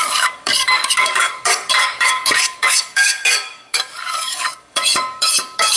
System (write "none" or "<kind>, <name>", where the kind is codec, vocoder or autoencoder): codec, DAC